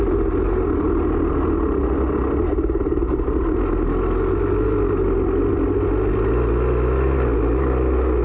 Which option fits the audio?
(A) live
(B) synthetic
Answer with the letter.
A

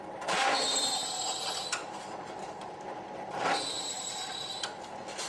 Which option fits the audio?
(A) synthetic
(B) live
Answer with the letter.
B